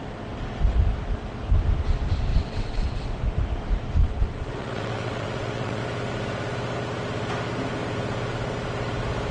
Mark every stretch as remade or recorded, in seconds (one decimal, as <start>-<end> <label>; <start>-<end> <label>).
0.0-2.3 recorded; 2.3-3.1 remade; 3.1-4.0 recorded; 4.0-5.8 remade; 5.8-9.3 recorded